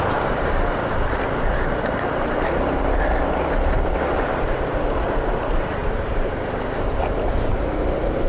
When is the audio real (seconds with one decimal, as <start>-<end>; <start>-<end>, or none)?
0.0-8.3